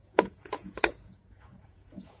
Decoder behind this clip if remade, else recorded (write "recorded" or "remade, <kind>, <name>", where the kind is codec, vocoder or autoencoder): remade, vocoder, Vocos